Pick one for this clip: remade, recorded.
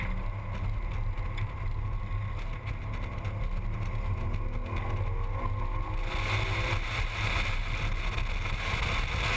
recorded